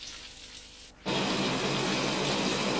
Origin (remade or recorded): recorded